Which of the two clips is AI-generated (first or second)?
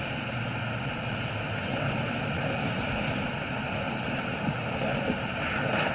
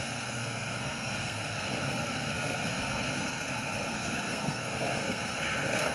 second